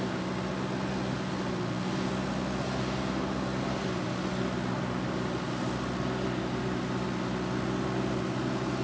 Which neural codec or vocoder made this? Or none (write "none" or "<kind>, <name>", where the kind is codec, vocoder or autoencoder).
none